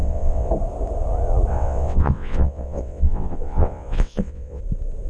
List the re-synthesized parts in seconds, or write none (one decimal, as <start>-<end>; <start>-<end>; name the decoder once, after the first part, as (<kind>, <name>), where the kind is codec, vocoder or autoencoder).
0.0-0.5 (vocoder, WaveNeXt); 1.5-4.6